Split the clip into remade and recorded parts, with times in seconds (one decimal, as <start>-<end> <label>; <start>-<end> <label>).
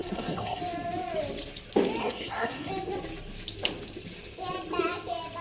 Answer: 0.0-0.6 remade; 0.6-2.0 recorded; 2.0-2.7 remade; 2.7-5.4 recorded